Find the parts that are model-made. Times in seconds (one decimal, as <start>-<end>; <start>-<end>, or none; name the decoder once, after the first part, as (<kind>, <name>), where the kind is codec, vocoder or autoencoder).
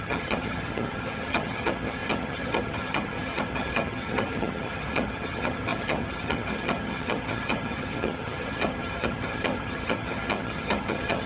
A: 0.0-11.3 (vocoder, HiFi-GAN)